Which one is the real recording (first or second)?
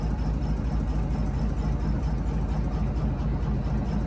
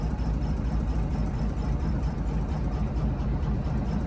first